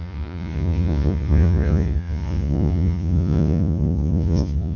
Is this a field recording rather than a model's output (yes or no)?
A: no